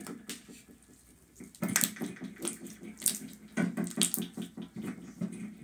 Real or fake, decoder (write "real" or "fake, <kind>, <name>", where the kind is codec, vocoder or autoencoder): real